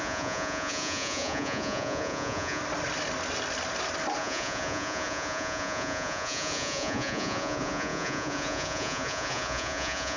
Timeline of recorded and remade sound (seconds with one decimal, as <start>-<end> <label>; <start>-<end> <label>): 0.0-2.6 remade; 2.6-4.2 recorded; 4.2-10.2 remade

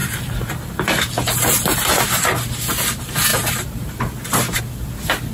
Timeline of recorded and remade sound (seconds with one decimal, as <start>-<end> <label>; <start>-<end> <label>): 0.0-1.1 remade; 1.1-3.3 recorded; 3.3-4.6 remade; 4.6-5.3 recorded

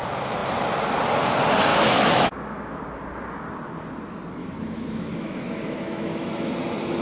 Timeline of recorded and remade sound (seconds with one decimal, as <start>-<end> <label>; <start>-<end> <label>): 0.0-1.7 recorded; 1.7-2.8 remade; 2.8-4.4 recorded; 4.4-6.5 remade; 6.5-7.0 recorded

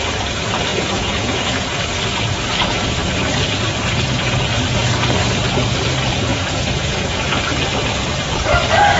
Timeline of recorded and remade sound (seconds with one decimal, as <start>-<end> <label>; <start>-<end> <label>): 0.0-0.7 recorded; 0.7-1.8 remade; 1.8-6.3 recorded; 6.3-7.4 remade; 7.4-9.0 recorded

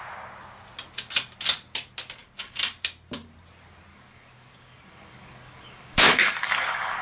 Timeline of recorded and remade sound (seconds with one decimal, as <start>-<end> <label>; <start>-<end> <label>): 0.0-2.2 recorded; 2.2-2.7 remade; 2.7-3.9 recorded; 3.9-7.0 remade

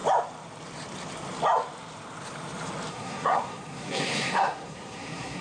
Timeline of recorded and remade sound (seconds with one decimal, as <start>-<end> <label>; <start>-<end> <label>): 0.0-2.9 recorded; 2.9-5.4 remade

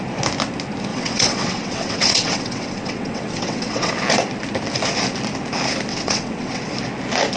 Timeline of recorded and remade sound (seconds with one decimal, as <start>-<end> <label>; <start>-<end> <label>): 0.0-0.9 recorded; 0.9-3.9 remade; 3.9-5.9 recorded; 5.9-6.7 remade; 6.7-7.4 recorded

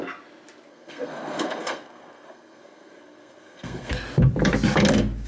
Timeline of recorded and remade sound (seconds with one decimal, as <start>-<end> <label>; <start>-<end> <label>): 0.0-0.7 recorded; 0.7-3.9 remade; 3.9-5.3 recorded